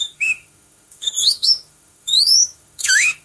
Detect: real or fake fake